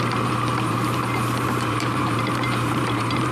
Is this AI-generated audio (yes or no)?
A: yes